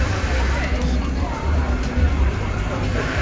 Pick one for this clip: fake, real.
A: fake